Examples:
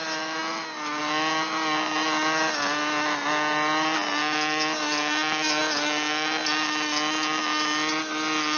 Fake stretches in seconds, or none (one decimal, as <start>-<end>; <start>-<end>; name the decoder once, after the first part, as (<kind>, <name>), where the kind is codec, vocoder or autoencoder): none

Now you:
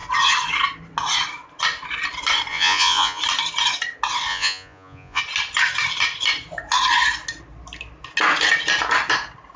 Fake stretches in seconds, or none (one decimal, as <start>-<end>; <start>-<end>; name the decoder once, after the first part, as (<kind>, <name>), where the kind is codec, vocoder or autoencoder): 2.5-3.2 (vocoder, Vocos); 4.3-5.2

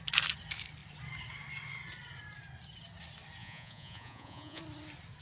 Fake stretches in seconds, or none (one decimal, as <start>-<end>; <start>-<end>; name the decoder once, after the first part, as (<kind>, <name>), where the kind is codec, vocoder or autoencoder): 3.4-4.6 (vocoder, Vocos)

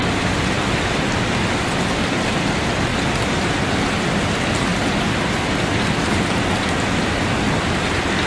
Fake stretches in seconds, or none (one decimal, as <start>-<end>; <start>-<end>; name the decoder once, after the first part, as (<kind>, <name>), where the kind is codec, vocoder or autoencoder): none